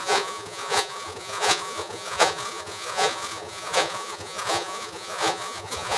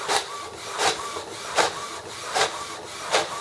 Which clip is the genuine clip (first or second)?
second